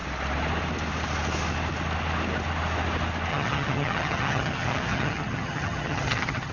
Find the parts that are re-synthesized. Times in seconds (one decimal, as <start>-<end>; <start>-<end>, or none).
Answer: 3.3-6.5